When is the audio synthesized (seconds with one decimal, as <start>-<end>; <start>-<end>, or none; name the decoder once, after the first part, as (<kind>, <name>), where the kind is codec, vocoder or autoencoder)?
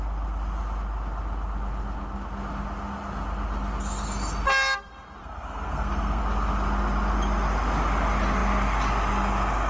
5.2-6.2 (codec, SNAC)